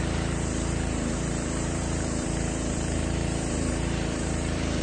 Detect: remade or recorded remade